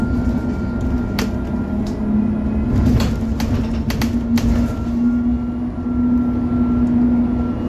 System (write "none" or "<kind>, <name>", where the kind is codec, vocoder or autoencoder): none